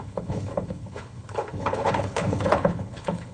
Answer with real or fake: fake